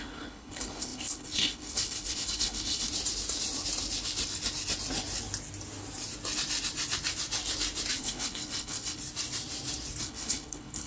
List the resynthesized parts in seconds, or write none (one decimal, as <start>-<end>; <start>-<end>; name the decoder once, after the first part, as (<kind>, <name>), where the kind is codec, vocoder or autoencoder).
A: 0.0-2.9 (codec, HILCodec); 8.0-9.0; 10.0-10.9